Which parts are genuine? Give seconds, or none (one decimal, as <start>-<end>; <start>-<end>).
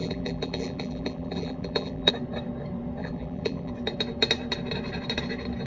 2.1-3.0; 3.7-5.7